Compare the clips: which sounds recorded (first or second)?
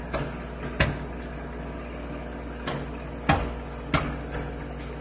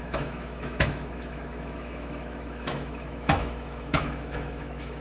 first